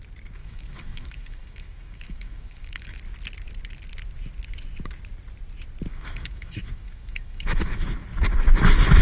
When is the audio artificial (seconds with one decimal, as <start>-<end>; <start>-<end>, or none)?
0.4-3.0; 5.9-7.9